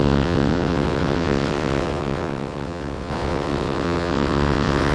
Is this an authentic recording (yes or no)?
no